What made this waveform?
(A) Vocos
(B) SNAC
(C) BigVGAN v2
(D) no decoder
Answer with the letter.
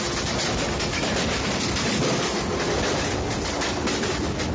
D